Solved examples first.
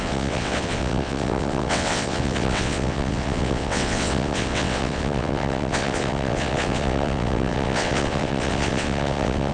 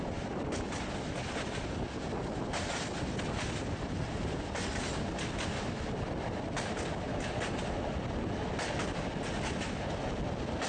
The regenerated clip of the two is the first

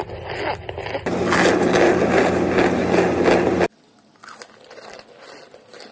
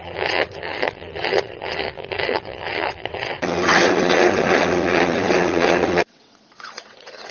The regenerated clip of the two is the second